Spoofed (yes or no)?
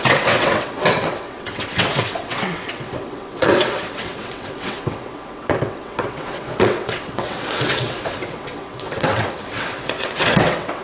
yes